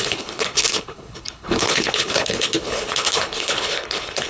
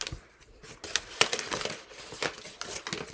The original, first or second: second